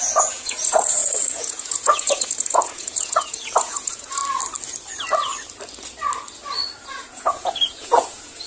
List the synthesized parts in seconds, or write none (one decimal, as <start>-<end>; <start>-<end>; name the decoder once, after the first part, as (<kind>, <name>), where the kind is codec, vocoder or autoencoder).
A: 0.0-4.2 (vocoder, Vocos); 6.9-8.5